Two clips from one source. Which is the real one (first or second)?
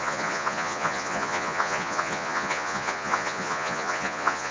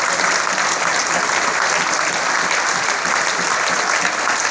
second